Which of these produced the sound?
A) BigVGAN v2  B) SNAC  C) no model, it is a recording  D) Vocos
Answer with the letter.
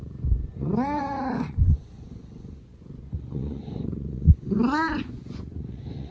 D